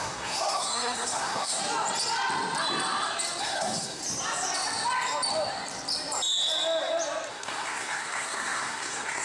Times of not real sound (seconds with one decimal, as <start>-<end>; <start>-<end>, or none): 0.0-1.6; 3.4-4.0; 7.3-9.2